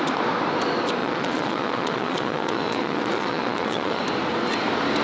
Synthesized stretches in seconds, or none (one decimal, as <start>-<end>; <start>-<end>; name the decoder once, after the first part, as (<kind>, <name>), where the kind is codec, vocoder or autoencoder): 1.0-4.0 (vocoder, Vocos)